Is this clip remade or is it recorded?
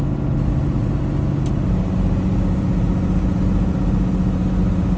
recorded